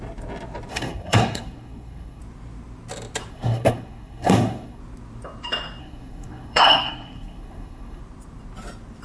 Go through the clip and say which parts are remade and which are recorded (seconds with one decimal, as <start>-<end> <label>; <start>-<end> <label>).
0.0-0.7 recorded; 0.7-2.2 remade; 2.2-3.3 recorded; 3.3-4.8 remade; 4.8-5.8 recorded; 5.8-8.0 remade; 8.0-9.0 recorded